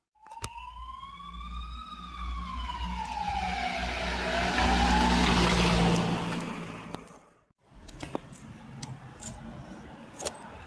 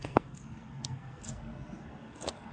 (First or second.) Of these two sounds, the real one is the first